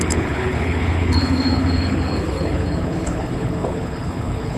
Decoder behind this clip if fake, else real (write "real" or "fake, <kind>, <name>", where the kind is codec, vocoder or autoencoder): fake, codec, HILCodec